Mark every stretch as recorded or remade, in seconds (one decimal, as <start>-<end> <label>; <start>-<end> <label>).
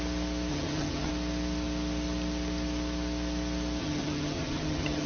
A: 0.0-0.5 recorded; 0.5-1.1 remade; 1.1-3.8 recorded; 3.8-5.1 remade